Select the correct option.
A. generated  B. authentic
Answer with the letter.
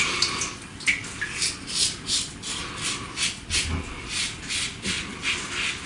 B